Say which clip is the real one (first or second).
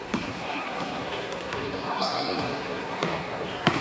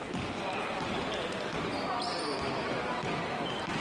second